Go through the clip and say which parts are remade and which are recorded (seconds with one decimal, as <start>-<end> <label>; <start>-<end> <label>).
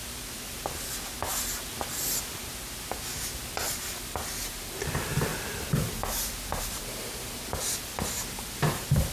0.0-9.1 recorded